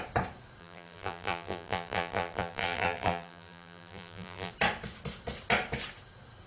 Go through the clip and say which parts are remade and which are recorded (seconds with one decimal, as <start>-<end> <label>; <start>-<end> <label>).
0.0-0.6 recorded; 0.6-4.5 remade; 4.5-6.5 recorded